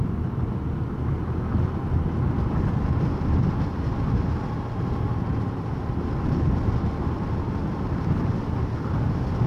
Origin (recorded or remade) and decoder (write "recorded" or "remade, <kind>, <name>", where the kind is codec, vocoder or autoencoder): recorded